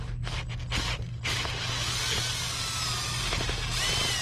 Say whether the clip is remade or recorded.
recorded